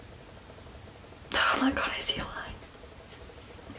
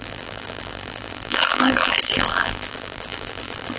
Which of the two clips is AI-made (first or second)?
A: second